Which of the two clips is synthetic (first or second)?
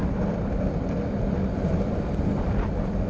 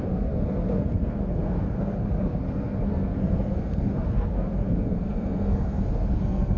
second